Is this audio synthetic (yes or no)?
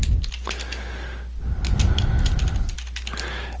no